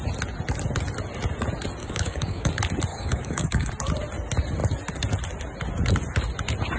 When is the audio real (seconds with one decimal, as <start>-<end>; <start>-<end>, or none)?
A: 0.0-1.8; 2.5-2.9; 3.7-6.8